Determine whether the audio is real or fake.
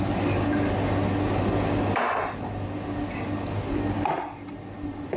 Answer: real